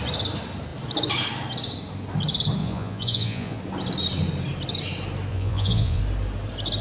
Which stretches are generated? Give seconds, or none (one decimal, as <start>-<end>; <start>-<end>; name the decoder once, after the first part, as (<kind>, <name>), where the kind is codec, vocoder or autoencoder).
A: 2.6-3.6 (vocoder, Vocos); 5.3-6.0